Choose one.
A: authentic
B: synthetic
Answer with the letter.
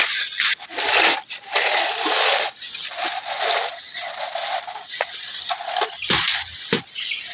A